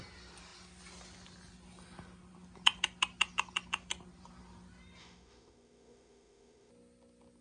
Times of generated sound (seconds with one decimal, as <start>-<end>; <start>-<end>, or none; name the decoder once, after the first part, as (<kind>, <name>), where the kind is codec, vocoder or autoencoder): 5.0-6.7 (autoencoder, DAC-VAE)